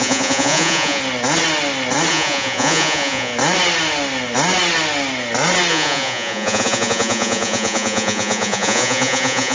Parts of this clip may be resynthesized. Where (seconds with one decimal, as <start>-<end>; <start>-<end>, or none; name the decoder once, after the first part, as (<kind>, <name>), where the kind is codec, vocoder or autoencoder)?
0.0-1.0 (vocoder, Vocos); 2.1-3.3; 5.7-9.5